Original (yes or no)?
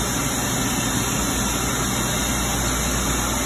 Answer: yes